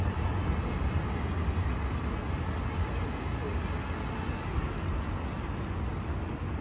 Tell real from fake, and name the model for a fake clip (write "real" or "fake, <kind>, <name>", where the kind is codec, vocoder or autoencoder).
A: real